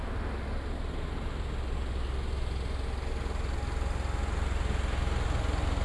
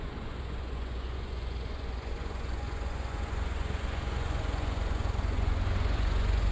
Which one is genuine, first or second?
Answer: first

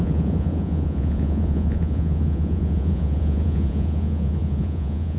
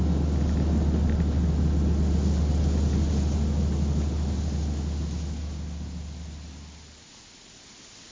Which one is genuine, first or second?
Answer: second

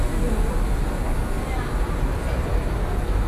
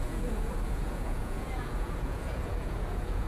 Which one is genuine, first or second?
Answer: first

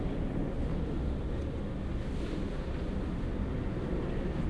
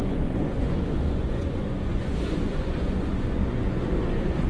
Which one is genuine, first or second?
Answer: first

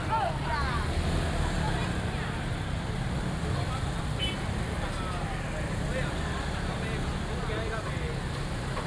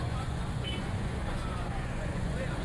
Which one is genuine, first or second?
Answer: first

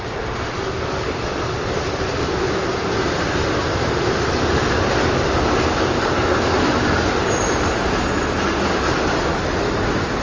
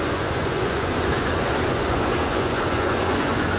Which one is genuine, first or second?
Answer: first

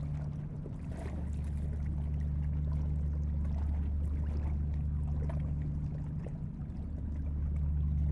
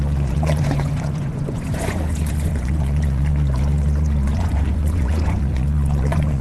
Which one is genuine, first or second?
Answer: first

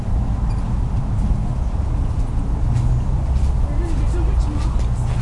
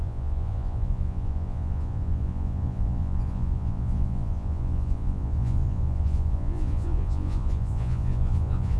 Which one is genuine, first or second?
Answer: first